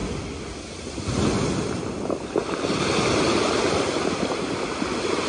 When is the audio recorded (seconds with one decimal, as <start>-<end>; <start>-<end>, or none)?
0.0-5.3